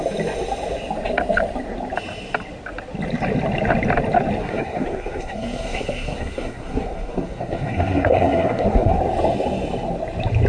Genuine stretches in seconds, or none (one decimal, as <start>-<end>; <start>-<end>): 0.0-4.4; 9.0-10.5

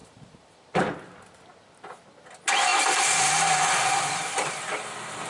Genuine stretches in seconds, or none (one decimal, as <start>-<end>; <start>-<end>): 0.9-2.7

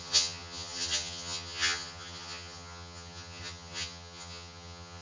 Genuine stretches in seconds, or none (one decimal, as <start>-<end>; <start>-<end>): none

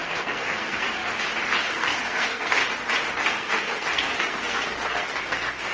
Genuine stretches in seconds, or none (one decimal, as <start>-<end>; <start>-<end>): 1.0-1.6; 2.6-3.2

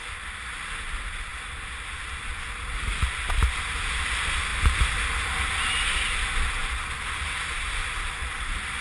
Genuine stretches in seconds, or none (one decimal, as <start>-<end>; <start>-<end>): 0.0-4.5; 5.0-8.2

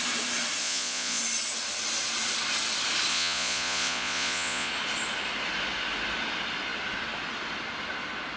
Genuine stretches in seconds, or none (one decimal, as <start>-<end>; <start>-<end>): 0.0-0.6; 1.2-3.1; 4.7-8.4

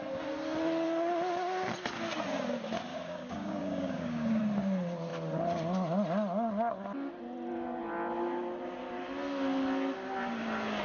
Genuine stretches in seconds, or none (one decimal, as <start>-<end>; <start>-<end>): 0.0-2.9; 4.4-10.8

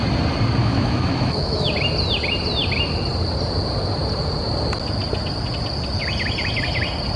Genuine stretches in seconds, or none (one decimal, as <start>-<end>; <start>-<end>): 0.0-0.6; 1.7-7.2